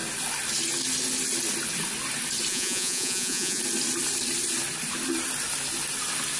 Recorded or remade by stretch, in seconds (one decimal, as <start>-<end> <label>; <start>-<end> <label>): 0.0-2.5 recorded; 2.5-3.6 remade; 3.6-6.4 recorded